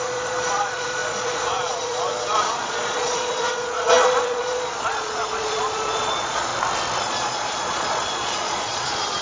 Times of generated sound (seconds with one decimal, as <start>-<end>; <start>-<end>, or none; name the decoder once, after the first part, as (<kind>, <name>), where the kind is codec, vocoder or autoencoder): 0.0-6.5 (vocoder, Vocos); 7.1-9.2